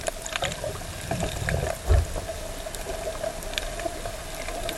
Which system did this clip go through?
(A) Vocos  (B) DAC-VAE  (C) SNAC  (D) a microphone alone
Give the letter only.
D